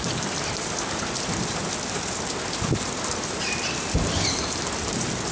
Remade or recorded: recorded